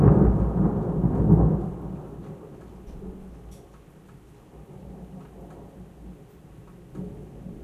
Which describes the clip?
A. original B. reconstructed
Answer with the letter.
A